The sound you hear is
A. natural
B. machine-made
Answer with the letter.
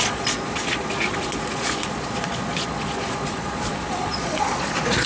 B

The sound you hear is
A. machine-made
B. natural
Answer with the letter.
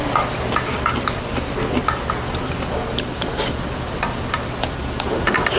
B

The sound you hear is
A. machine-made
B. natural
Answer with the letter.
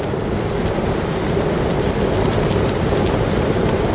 B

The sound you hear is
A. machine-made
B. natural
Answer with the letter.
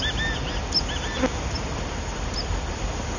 B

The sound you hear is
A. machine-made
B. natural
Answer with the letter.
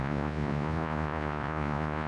A